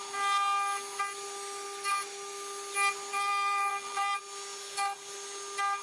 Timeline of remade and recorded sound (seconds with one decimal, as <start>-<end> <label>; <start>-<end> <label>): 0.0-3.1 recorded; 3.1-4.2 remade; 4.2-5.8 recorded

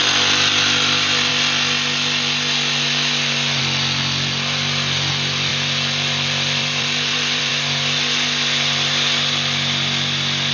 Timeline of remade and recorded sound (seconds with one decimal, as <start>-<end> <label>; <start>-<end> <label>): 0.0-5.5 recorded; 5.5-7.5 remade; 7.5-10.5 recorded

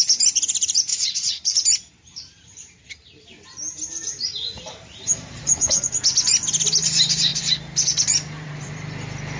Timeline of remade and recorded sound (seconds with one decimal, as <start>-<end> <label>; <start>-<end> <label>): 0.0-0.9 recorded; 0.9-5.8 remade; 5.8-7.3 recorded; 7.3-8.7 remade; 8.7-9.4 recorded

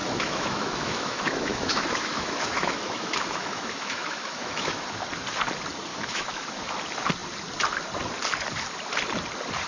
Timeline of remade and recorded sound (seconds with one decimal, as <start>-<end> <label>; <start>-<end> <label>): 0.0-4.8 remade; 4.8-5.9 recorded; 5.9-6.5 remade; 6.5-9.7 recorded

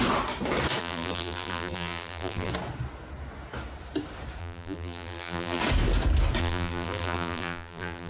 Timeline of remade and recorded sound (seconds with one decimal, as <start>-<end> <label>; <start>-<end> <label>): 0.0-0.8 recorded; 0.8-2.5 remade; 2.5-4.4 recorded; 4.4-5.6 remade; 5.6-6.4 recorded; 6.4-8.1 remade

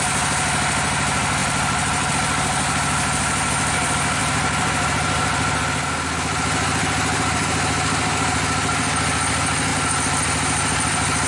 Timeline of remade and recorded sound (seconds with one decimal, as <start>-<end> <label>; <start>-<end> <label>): 0.0-4.2 recorded; 4.2-5.6 remade; 5.6-11.3 recorded